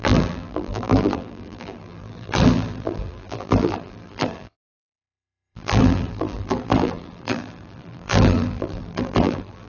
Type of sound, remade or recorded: remade